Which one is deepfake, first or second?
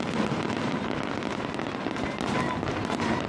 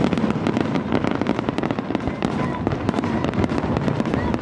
second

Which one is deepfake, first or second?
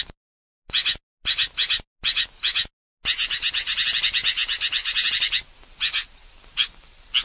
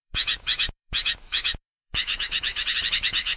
second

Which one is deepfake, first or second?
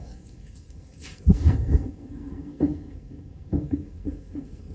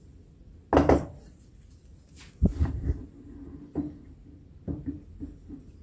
first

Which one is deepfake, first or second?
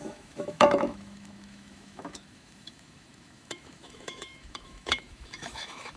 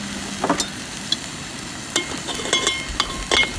first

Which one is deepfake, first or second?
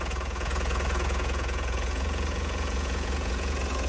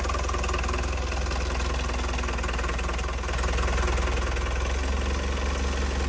first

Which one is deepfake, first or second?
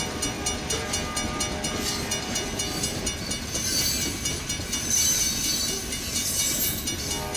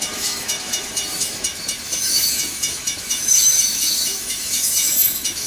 second